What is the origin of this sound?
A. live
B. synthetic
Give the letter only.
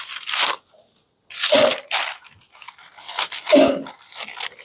A